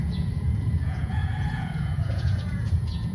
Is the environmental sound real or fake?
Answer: fake